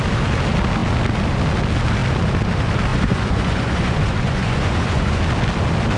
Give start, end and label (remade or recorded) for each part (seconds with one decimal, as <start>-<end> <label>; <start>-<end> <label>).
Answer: 0.0-2.9 recorded; 2.9-5.2 remade; 5.2-6.0 recorded